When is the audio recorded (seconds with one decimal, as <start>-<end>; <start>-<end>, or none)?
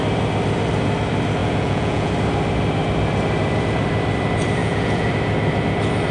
0.0-1.4; 2.1-4.6; 5.1-6.1